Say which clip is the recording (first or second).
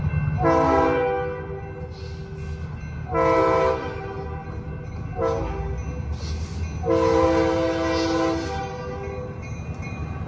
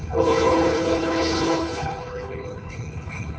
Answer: first